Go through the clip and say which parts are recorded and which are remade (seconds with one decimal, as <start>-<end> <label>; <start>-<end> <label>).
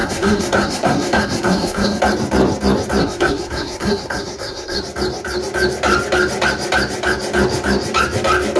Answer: 0.0-2.0 remade; 2.0-3.0 recorded; 3.0-4.8 remade; 4.8-8.6 recorded